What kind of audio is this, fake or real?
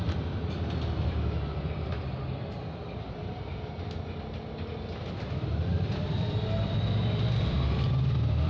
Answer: fake